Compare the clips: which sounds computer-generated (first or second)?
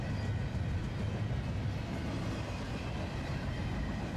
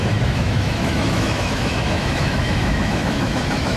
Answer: second